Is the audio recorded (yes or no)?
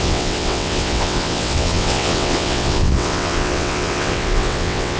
no